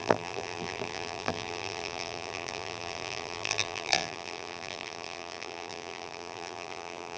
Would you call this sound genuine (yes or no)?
no